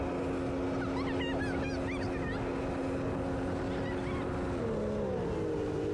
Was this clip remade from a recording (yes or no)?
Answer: no